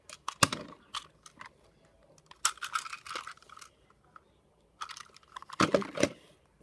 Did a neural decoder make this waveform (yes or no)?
no